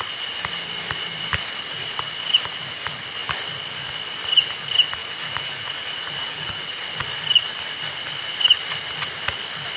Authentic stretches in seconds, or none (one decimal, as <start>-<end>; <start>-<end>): 0.0-5.0; 6.8-9.8